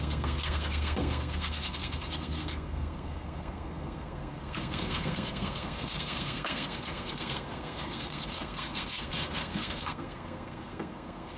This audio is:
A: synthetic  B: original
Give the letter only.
A